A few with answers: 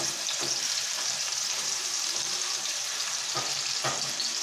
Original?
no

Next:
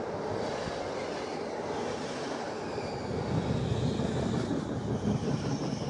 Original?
yes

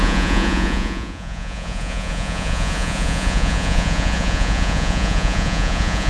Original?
no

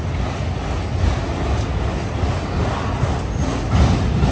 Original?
yes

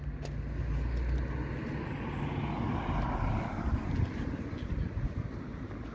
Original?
yes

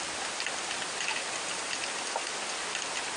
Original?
yes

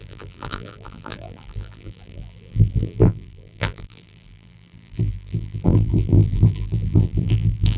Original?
no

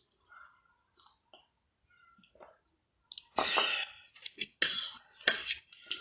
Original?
yes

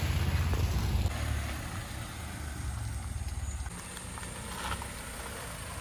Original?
yes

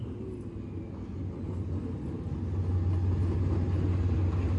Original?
yes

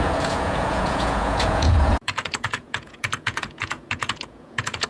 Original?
no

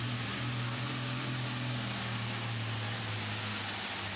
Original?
yes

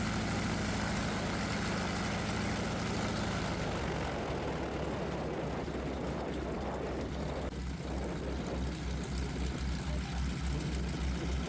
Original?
yes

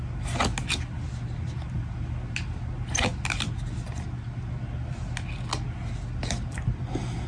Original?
yes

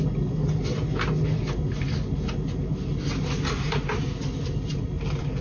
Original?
yes